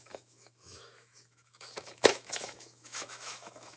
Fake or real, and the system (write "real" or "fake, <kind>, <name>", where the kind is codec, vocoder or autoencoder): fake, autoencoder, DAC-VAE